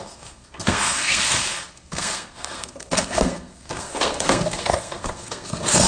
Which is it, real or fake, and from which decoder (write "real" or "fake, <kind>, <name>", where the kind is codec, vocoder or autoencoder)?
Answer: fake, codec, SNAC